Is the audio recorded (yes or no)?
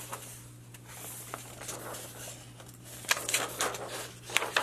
yes